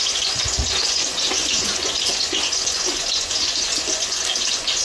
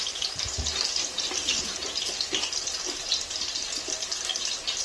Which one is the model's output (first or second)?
first